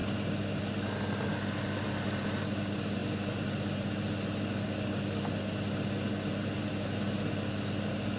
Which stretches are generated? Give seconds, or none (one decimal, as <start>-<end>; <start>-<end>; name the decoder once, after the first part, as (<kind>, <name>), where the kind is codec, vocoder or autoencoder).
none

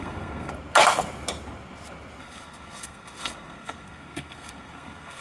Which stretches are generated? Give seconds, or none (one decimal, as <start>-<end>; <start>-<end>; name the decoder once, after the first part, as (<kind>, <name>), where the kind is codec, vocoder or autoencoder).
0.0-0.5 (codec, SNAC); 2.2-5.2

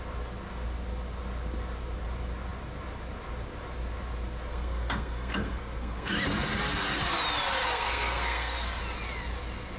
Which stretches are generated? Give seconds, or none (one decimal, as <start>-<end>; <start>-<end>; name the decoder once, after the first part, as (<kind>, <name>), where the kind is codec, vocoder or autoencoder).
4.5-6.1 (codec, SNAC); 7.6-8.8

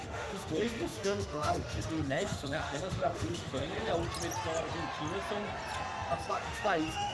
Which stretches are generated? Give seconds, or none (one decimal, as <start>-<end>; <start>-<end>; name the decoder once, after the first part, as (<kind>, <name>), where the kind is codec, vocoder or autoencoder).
0.0-3.9 (autoencoder, DAC-VAE); 6.3-7.1

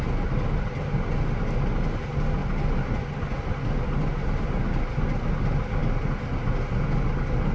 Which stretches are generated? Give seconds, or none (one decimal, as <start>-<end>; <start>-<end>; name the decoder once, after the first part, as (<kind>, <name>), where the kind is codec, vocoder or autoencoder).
none

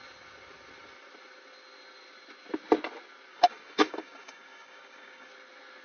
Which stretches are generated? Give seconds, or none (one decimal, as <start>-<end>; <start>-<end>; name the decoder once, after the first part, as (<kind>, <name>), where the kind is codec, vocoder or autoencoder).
3.3-5.3 (codec, DAC)

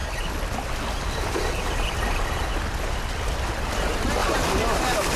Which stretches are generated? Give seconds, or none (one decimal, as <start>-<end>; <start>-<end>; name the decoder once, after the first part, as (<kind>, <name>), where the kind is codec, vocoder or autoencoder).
none